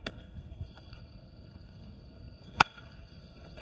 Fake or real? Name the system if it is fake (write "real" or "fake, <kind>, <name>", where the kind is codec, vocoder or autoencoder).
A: fake, codec, SNAC